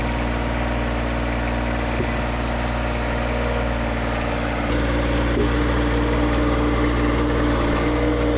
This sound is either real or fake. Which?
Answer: real